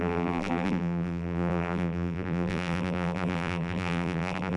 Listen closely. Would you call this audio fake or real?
fake